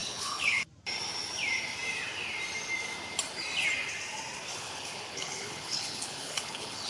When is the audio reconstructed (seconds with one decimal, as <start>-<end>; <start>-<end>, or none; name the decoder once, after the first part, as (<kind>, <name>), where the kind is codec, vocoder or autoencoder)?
0.0-0.6 (codec, HILCodec); 4.5-6.9